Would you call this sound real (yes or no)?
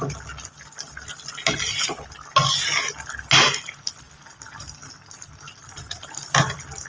yes